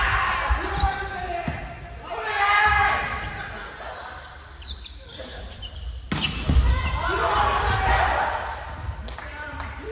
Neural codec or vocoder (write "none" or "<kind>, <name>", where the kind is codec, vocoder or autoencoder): none